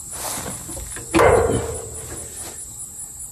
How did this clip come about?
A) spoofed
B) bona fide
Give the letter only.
B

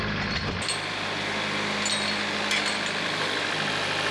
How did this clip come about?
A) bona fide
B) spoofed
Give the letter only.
A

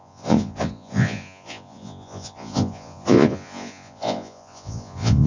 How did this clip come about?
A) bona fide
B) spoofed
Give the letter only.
B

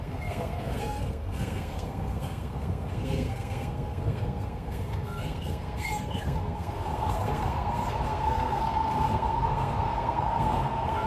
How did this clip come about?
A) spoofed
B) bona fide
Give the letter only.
A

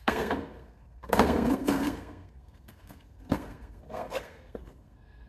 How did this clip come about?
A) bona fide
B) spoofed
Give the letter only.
B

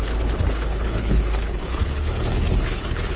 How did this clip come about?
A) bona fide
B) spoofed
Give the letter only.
B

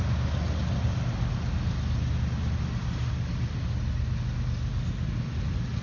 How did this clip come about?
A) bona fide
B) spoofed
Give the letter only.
A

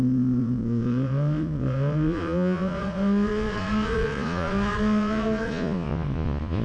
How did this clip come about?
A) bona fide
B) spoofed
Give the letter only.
B